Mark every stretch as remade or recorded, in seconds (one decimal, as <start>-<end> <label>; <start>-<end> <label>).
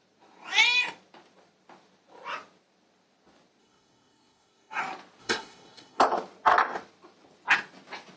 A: 0.0-3.6 recorded; 3.6-4.8 remade; 4.8-5.2 recorded; 5.2-6.0 remade; 6.0-8.2 recorded